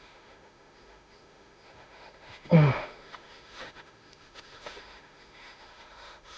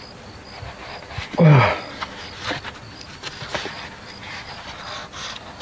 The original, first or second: second